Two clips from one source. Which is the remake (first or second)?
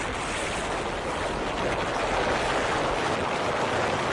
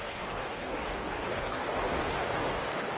second